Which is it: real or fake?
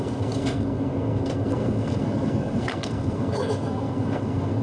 fake